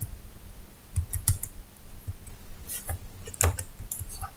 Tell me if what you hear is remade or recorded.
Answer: recorded